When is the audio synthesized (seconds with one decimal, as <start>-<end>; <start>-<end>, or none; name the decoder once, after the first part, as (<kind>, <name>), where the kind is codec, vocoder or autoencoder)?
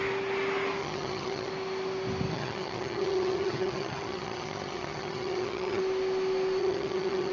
0.8-1.5 (vocoder, HiFi-GAN); 2.3-5.8; 6.6-7.3